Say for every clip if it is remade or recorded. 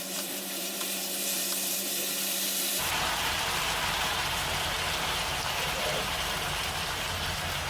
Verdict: remade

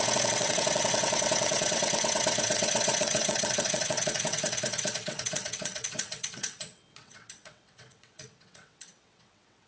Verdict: remade